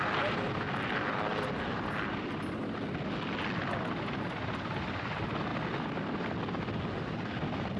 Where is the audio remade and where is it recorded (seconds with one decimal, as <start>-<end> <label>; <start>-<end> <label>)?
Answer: 0.0-7.8 recorded